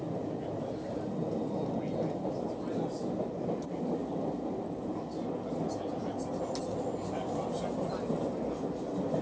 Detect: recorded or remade recorded